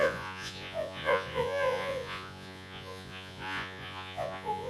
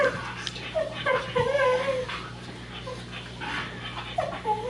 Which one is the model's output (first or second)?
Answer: first